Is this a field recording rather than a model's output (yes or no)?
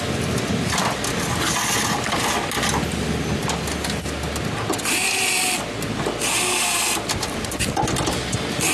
yes